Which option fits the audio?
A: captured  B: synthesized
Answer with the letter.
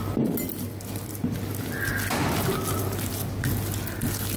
A